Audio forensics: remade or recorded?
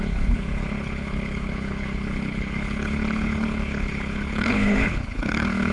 remade